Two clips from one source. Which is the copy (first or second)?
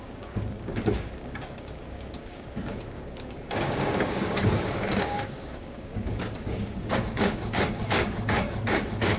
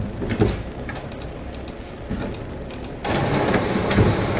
first